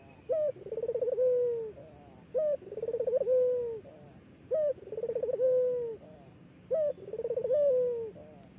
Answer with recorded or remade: recorded